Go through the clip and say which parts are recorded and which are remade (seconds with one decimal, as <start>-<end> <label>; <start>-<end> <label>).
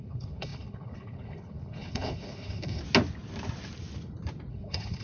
0.0-2.8 remade; 2.8-4.5 recorded; 4.5-5.0 remade